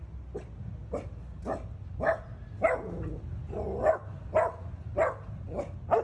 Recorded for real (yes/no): yes